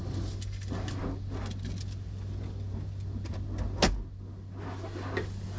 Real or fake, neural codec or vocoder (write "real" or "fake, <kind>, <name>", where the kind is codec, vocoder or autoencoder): real